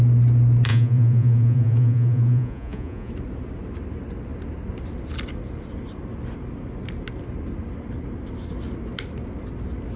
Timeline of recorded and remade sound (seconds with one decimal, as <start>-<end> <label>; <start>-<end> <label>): 0.0-0.7 recorded; 0.7-3.1 remade; 3.1-10.0 recorded